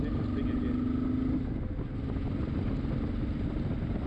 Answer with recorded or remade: recorded